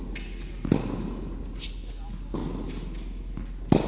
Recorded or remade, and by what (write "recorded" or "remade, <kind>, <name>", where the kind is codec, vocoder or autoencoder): recorded